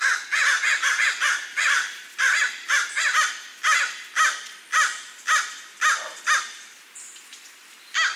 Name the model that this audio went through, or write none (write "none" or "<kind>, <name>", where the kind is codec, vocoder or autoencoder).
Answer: none